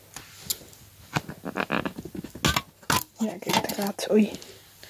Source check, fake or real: real